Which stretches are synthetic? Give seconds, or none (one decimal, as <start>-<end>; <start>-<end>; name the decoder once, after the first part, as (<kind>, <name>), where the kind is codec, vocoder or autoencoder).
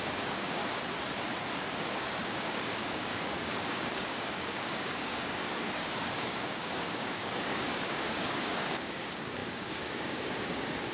0.0-0.6 (codec, DAC); 1.6-10.9